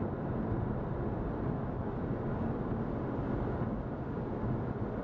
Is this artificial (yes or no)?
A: no